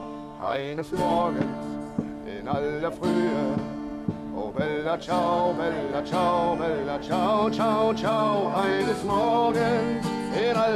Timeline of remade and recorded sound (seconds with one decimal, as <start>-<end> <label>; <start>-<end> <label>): 0.0-1.2 remade; 1.2-8.1 recorded; 8.1-9.5 remade; 9.5-10.8 recorded